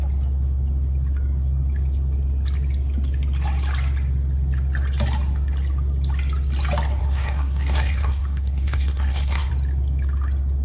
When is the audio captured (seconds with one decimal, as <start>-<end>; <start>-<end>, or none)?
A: 0.0-7.0; 9.5-10.6